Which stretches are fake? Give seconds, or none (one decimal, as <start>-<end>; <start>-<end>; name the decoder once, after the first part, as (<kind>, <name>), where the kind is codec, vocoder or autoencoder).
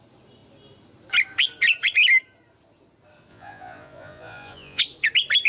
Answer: 3.3-4.8 (vocoder, Vocos)